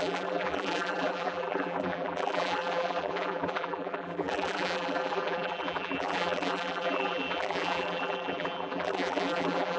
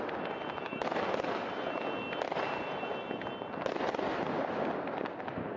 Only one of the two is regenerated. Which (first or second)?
first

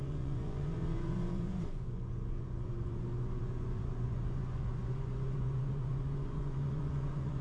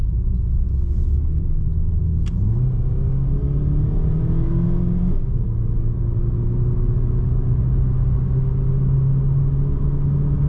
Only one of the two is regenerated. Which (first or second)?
first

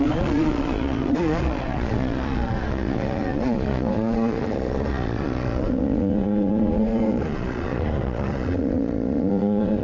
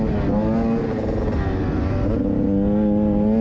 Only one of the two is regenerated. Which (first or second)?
first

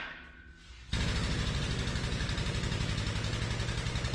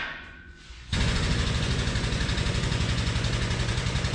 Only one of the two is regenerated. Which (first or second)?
second